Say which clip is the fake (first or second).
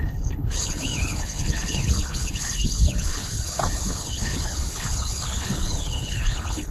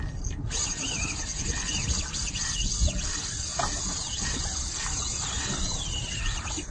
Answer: first